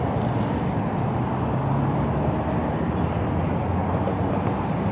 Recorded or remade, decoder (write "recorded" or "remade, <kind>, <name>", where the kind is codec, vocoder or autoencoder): recorded